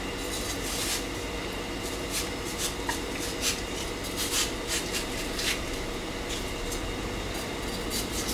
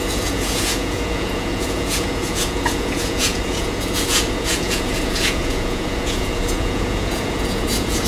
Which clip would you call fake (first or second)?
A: second